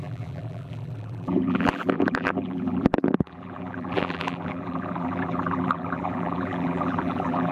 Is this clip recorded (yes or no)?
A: no